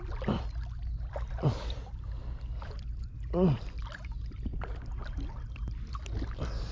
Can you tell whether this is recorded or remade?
recorded